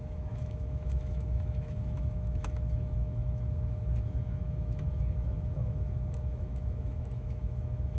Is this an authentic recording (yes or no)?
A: no